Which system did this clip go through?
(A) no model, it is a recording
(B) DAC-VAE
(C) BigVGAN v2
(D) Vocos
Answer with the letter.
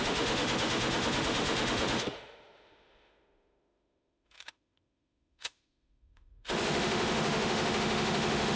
B